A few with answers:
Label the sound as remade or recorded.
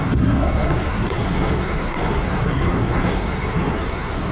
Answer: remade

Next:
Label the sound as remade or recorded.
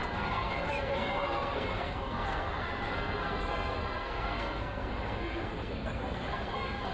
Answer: remade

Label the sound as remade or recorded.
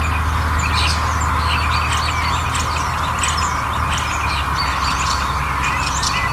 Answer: recorded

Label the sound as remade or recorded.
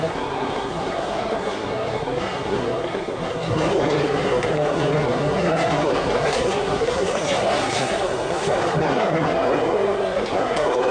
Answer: remade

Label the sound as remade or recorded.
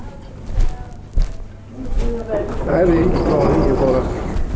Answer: recorded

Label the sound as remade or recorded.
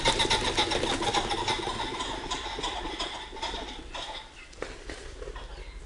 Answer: recorded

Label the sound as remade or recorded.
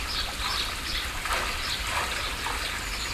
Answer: recorded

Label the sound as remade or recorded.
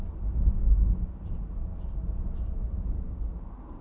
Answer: recorded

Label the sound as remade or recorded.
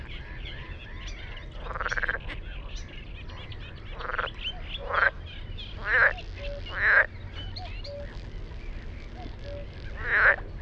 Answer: recorded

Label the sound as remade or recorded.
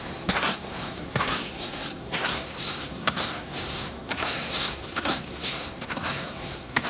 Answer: remade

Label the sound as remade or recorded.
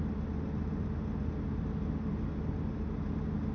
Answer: recorded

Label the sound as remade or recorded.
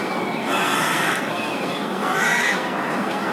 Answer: remade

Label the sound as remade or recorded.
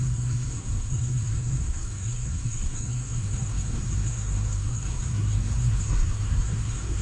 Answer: remade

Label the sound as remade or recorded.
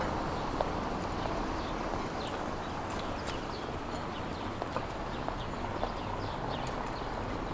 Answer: recorded